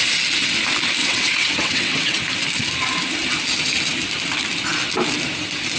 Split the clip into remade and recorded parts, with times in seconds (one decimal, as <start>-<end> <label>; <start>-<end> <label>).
0.0-1.0 recorded; 1.0-2.2 remade; 2.2-5.8 recorded